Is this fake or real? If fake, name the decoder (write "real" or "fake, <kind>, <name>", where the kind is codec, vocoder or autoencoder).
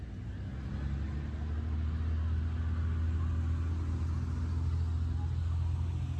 real